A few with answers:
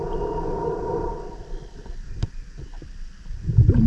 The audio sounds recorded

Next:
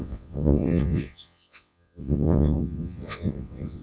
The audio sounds remade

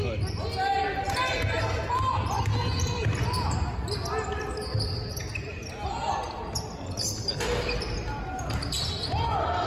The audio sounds recorded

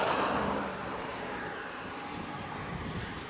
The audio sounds remade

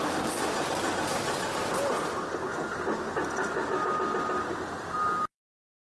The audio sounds recorded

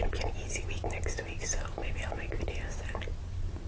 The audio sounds recorded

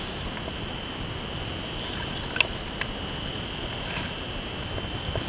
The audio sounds recorded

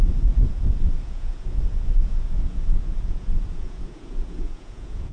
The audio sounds remade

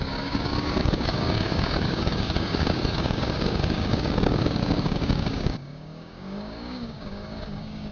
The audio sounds remade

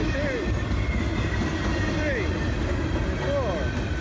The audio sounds recorded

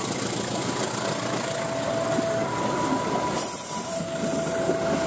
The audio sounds recorded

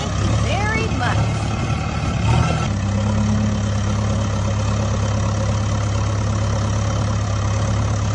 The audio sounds recorded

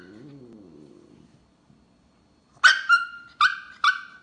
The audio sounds recorded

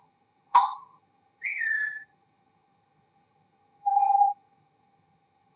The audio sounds remade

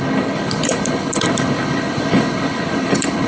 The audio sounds remade